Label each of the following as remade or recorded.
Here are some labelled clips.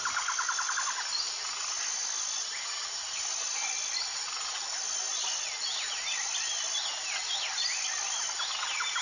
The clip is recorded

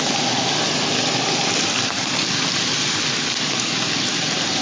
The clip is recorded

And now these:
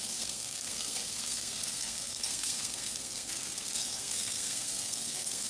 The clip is remade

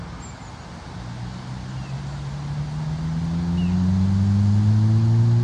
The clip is recorded